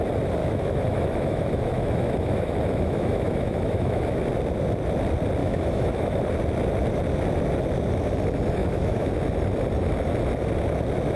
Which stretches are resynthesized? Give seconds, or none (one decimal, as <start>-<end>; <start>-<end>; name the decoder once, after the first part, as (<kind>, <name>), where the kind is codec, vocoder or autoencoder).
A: 0.4-4.2 (autoencoder, DAC-VAE); 5.4-6.2; 8.6-9.1

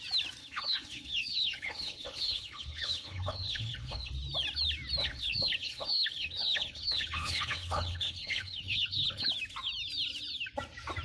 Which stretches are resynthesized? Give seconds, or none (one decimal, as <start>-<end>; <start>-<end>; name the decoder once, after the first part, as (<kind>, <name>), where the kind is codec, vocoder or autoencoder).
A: 0.4-4.1 (codec, HILCodec); 5.0-9.3

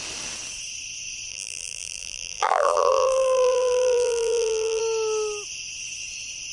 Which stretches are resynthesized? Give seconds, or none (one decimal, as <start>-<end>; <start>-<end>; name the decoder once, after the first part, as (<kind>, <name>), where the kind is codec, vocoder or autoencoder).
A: 1.3-4.8 (vocoder, BigVGAN v2)

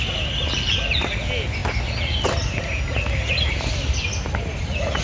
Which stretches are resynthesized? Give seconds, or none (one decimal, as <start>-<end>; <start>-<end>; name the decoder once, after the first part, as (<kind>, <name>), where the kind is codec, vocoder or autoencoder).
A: none

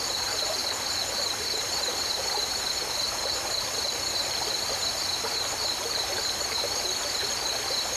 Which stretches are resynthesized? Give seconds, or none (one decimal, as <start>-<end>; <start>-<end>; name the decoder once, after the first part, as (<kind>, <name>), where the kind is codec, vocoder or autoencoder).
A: none